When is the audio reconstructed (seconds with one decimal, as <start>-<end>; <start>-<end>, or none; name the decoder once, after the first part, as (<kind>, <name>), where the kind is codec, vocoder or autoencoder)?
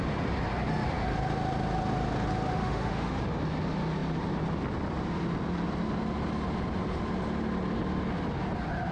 2.5-3.1 (autoencoder, DAC-VAE)